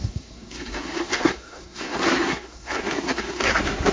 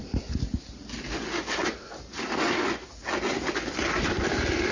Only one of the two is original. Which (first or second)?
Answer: second